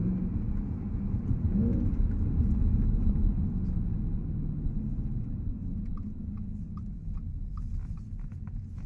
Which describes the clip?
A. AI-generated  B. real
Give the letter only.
B